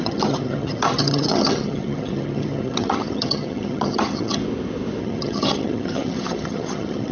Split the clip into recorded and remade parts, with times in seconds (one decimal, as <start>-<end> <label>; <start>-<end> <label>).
0.0-4.4 remade; 4.4-5.0 recorded; 5.0-7.1 remade